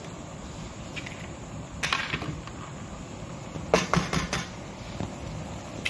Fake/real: real